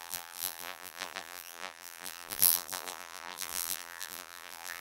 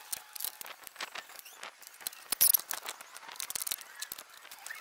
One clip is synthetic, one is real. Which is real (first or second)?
second